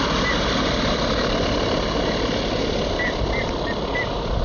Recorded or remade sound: recorded